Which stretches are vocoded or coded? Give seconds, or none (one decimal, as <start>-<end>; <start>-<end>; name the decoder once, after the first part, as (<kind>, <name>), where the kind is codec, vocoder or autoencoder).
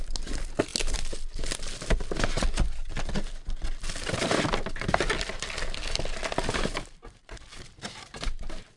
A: none